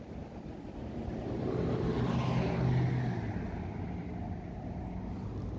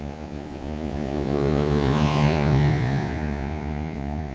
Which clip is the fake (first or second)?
second